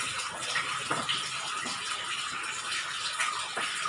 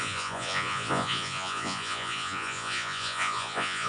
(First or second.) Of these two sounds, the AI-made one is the second